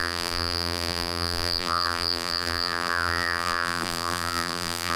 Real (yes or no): no